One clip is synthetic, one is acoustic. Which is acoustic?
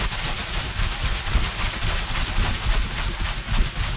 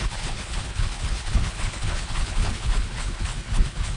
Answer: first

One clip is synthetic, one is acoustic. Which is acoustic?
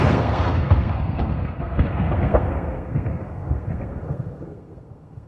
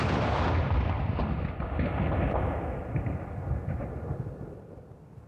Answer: second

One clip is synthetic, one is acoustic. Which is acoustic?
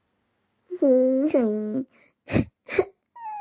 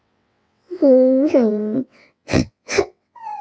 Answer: first